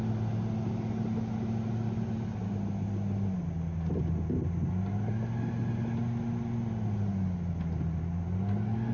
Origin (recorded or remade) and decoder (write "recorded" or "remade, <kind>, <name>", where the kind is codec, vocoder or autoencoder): recorded